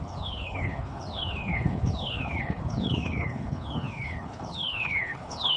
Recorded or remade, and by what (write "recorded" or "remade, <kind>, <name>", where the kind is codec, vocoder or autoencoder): remade, codec, HILCodec